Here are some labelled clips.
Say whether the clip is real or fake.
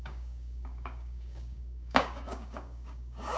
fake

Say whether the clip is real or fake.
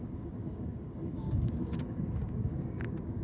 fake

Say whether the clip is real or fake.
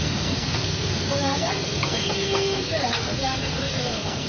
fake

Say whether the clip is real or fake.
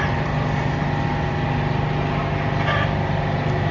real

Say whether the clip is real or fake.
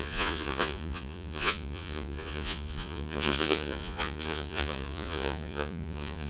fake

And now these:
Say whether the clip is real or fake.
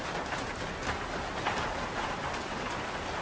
real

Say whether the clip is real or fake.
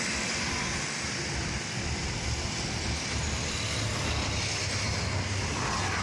real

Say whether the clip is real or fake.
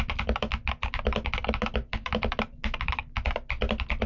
real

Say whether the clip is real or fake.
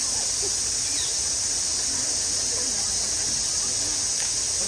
real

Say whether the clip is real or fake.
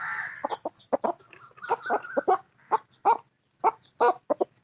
real